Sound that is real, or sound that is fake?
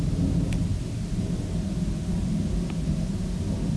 real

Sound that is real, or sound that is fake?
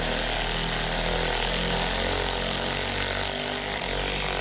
real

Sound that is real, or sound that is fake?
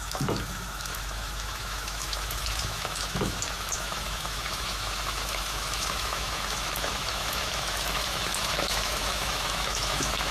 fake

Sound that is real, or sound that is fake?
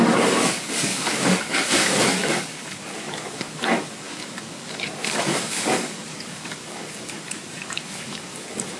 fake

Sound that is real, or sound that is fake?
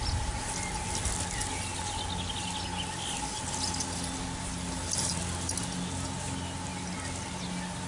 real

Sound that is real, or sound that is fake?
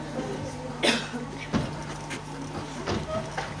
real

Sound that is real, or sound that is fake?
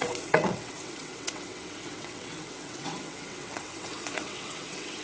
fake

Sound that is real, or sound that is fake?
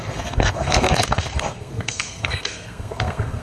fake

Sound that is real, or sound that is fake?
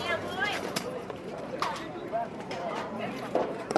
fake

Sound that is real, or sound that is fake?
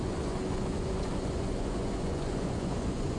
fake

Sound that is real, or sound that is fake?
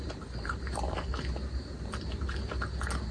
real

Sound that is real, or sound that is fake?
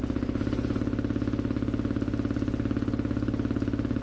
real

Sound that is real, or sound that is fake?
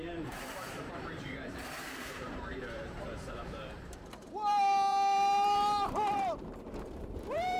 fake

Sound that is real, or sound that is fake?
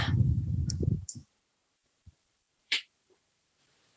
fake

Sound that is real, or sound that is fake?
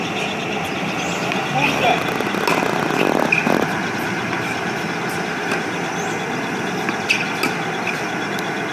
real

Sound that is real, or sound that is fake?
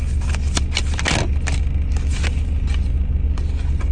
real